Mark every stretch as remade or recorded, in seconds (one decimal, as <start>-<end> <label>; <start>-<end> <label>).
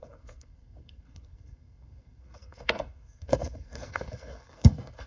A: 0.0-5.1 remade